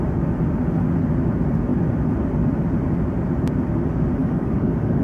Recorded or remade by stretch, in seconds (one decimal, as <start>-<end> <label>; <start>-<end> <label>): 0.0-4.2 recorded; 4.2-5.0 remade